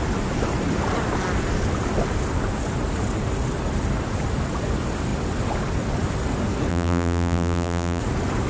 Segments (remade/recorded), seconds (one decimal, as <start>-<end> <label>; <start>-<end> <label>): 0.0-6.7 recorded; 6.7-8.0 remade; 8.0-8.5 recorded